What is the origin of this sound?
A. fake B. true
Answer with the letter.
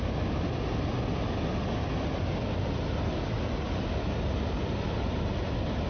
B